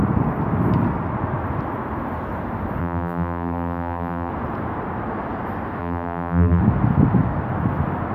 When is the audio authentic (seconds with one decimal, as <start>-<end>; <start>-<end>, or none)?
0.0-2.8; 4.3-5.8; 6.6-8.1